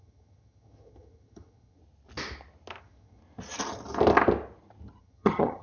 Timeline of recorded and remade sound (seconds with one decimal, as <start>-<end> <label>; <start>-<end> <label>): 0.0-1.8 remade; 1.8-2.8 recorded; 2.8-3.2 remade; 3.2-5.0 recorded; 5.0-5.6 remade